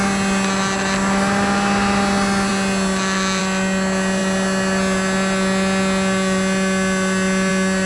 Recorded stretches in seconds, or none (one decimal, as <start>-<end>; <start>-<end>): 0.0-7.9